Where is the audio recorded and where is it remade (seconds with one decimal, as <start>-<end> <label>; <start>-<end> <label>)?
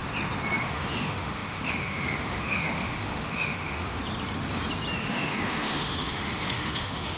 0.0-0.6 recorded; 0.6-4.0 remade; 4.0-5.0 recorded; 5.0-7.2 remade